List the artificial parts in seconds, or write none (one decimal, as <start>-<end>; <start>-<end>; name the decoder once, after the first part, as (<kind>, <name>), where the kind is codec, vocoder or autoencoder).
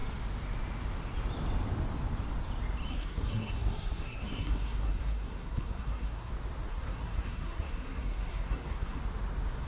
2.9-6.3 (codec, SNAC); 6.7-9.0